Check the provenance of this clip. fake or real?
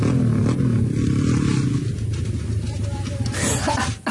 real